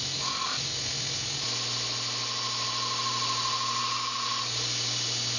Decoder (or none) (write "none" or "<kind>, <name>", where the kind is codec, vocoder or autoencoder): none